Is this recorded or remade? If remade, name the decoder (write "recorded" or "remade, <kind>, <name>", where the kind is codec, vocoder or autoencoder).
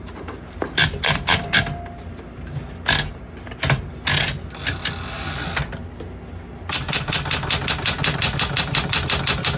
recorded